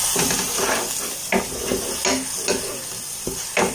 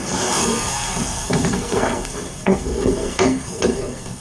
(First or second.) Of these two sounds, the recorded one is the first